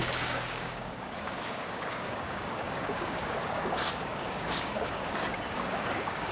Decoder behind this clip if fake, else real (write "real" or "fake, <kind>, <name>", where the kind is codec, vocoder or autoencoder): fake, codec, DAC